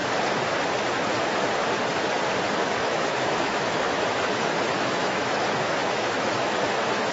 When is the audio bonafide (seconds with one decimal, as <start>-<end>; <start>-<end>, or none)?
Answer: 0.0-2.6